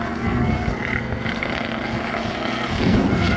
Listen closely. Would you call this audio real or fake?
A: fake